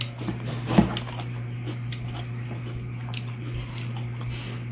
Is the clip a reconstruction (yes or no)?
no